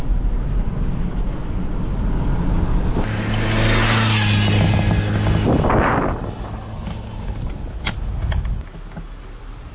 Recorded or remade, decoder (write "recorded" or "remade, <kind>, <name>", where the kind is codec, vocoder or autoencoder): recorded